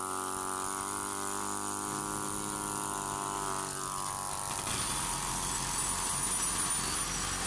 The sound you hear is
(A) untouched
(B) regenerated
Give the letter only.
A